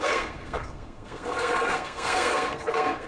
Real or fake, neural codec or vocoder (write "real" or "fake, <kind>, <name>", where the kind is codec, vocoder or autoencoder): fake, codec, SNAC